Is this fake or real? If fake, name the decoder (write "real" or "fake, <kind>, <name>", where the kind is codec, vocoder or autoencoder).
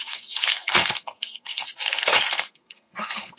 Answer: fake, codec, SNAC